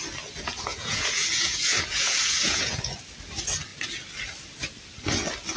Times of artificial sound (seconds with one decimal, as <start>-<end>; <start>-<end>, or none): 0.7-2.8